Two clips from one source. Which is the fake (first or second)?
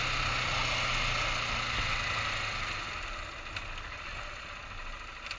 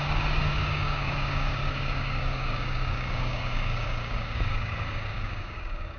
second